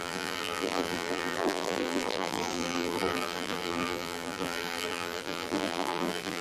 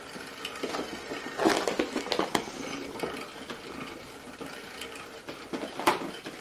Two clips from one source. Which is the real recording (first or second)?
second